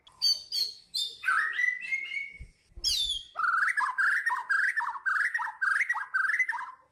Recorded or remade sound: recorded